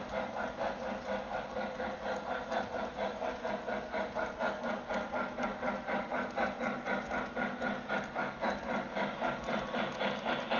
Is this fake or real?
real